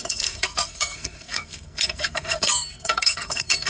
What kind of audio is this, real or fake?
fake